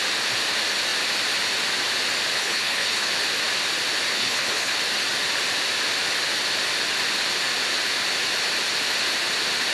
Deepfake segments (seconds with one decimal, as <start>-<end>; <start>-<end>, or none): 2.3-3.1; 4.1-4.7